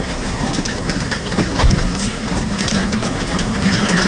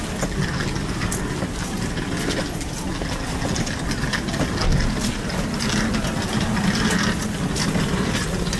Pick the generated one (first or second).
first